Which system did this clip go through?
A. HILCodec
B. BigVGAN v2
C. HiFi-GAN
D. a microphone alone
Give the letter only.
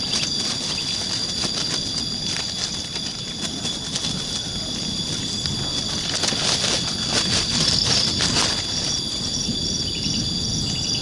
D